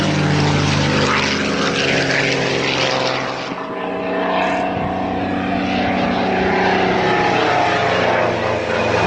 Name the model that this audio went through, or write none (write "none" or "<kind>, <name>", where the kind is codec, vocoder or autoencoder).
none